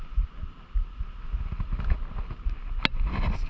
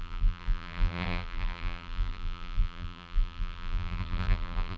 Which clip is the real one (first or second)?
first